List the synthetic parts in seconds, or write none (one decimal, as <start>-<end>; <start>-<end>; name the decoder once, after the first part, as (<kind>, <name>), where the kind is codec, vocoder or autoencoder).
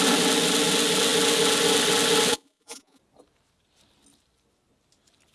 2.3-3.0 (vocoder, Vocos)